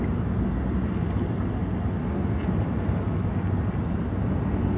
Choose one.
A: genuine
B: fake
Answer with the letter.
A